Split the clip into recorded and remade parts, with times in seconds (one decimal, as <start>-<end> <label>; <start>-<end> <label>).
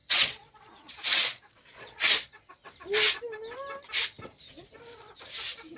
0.0-2.5 remade; 2.5-5.8 recorded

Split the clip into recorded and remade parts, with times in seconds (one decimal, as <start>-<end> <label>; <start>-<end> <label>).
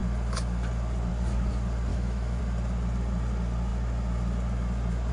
0.0-1.9 recorded; 1.9-2.4 remade; 2.4-5.1 recorded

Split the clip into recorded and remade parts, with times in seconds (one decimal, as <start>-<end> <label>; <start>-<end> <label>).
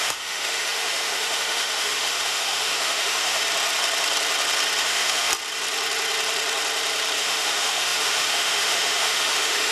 0.0-3.4 remade; 3.4-4.8 recorded; 4.8-5.3 remade; 5.3-7.2 recorded; 7.2-9.7 remade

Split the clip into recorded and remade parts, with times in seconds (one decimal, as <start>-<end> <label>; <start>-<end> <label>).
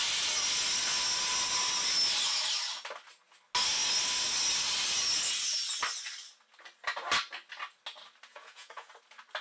0.0-8.3 recorded; 8.3-8.9 remade; 8.9-9.4 recorded